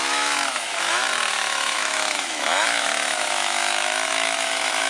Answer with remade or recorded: remade